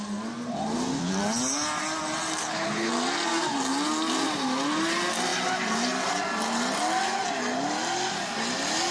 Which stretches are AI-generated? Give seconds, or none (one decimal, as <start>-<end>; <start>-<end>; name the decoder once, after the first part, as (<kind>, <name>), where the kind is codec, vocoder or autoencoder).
2.4-2.9 (codec, HILCodec)